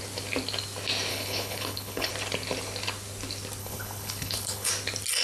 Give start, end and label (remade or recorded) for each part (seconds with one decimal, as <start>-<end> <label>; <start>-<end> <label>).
0.0-1.1 recorded; 1.1-2.1 remade; 2.1-3.6 recorded; 3.6-4.7 remade; 4.7-5.2 recorded